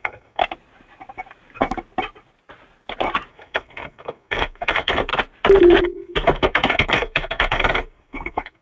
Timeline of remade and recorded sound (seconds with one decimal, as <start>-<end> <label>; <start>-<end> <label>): 0.0-0.4 remade; 0.4-3.3 recorded; 3.3-5.1 remade; 5.1-5.8 recorded; 5.8-8.6 remade